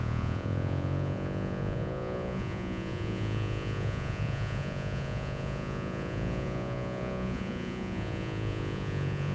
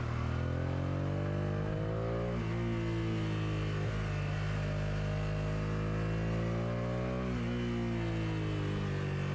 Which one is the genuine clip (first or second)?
second